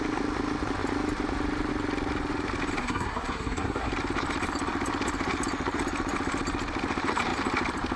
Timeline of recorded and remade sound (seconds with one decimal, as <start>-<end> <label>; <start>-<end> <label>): 0.0-2.8 recorded; 2.8-3.9 remade; 3.9-8.0 recorded